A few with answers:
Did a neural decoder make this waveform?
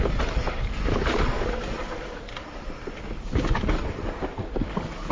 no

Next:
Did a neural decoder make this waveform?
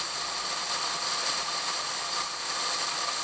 no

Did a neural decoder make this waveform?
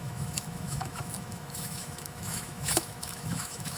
yes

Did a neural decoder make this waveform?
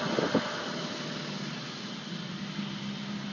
no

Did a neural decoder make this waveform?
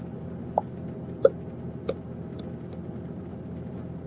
no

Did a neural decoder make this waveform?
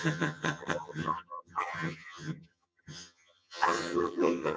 yes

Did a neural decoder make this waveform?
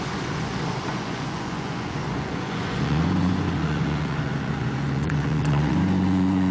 yes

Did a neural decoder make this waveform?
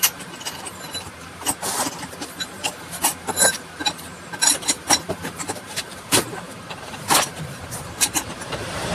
yes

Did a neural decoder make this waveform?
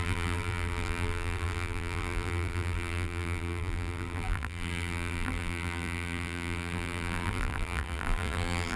yes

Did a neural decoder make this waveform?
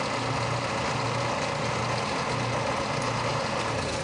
no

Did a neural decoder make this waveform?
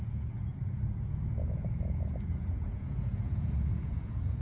yes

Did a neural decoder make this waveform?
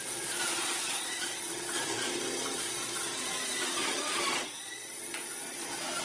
yes